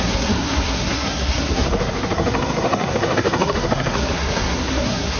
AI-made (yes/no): yes